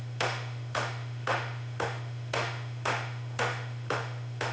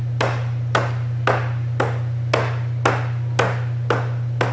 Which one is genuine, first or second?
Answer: second